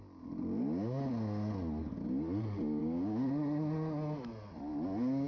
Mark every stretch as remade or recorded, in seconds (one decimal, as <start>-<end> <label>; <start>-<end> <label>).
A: 0.0-2.8 recorded; 2.8-3.3 remade; 3.3-5.3 recorded